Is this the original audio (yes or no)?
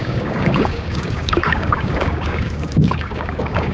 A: no